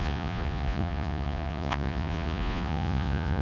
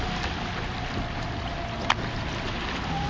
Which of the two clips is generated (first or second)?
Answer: first